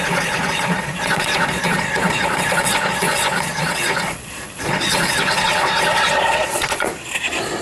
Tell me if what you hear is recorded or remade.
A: remade